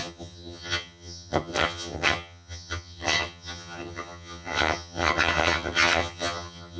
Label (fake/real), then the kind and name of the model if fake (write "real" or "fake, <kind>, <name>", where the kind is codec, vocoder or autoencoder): fake, vocoder, HiFi-GAN